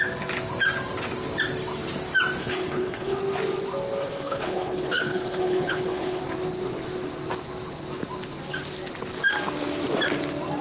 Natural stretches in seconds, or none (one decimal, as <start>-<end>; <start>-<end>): 0.0-2.4; 3.2-4.0; 6.2-10.6